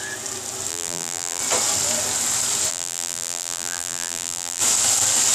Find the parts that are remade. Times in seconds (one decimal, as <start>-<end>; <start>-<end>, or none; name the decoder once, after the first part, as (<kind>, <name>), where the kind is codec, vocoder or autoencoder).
0.7-1.4 (vocoder, BigVGAN v2); 2.7-4.6